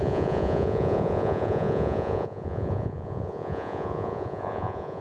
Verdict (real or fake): fake